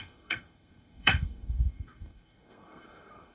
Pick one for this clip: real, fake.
fake